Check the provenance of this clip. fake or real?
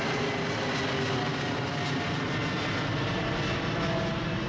real